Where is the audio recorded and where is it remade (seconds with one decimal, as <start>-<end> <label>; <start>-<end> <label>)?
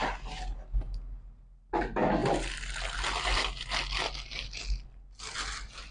0.0-5.9 recorded